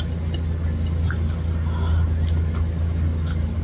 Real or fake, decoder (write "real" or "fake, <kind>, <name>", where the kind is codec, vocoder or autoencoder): real